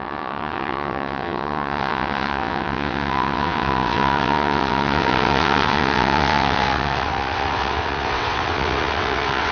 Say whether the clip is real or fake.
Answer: fake